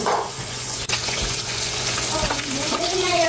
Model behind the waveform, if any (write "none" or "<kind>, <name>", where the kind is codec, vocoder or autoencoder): vocoder, Vocos